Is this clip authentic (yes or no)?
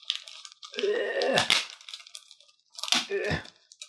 yes